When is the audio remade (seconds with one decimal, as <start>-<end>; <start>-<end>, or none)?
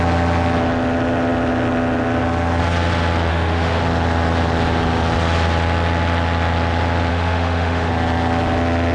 3.3-3.8; 7.1-7.9